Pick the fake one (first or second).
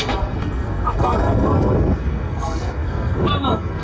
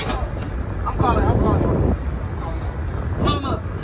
first